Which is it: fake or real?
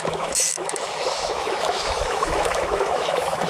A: fake